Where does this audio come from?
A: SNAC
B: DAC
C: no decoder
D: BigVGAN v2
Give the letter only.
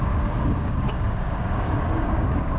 B